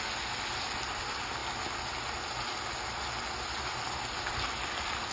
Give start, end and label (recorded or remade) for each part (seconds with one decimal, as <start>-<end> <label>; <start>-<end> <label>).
0.0-5.1 recorded